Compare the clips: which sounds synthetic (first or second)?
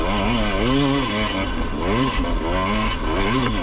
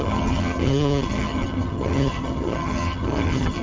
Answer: second